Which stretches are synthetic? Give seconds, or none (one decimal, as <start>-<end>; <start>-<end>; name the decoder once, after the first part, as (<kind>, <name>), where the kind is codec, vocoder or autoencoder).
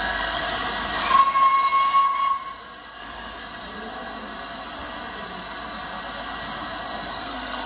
0.0-0.4 (codec, SNAC); 3.0-3.4; 7.1-7.7